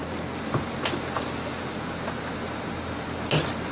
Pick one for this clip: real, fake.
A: real